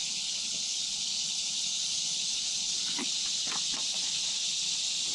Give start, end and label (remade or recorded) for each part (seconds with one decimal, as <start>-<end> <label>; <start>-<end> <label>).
0.0-3.1 remade; 3.1-5.1 recorded